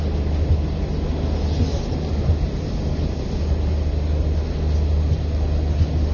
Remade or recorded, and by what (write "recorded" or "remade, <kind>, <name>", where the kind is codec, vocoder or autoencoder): recorded